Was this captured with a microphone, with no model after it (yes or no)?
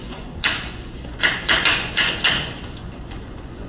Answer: no